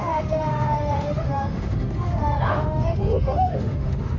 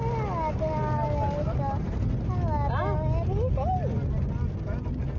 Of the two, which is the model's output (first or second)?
first